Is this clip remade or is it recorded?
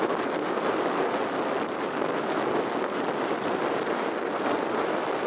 recorded